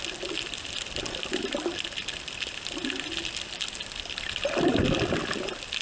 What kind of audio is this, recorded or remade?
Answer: recorded